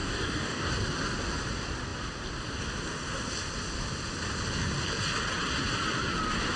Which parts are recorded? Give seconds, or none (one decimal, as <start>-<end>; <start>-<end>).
0.7-6.6